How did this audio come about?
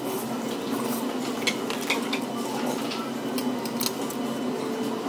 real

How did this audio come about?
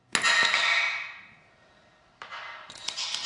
real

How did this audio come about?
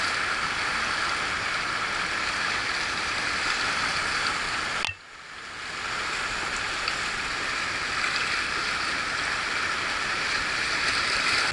real